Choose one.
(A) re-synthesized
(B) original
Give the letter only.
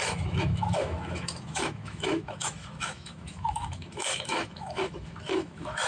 A